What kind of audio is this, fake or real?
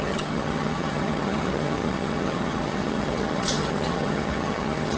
fake